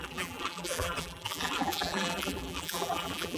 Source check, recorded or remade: remade